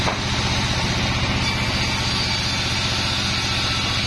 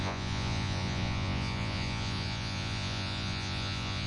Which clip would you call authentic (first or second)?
first